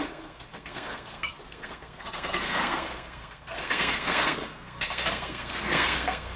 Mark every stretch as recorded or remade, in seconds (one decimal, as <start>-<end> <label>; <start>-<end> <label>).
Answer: 0.0-6.4 remade